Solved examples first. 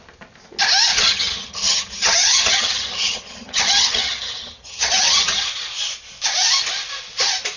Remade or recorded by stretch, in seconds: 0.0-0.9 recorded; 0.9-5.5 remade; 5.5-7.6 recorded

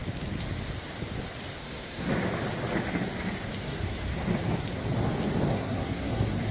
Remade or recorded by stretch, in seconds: 0.0-1.6 recorded; 1.6-2.1 remade; 2.1-3.6 recorded; 3.6-4.0 remade; 4.0-5.5 recorded; 5.5-6.5 remade

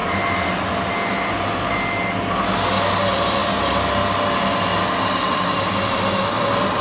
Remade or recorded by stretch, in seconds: 0.0-6.8 recorded